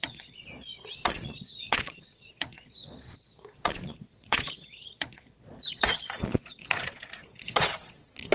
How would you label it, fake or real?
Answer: fake